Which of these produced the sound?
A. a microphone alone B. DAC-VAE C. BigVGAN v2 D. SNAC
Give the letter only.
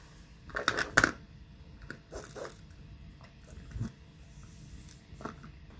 A